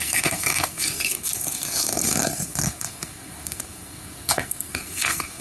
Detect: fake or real fake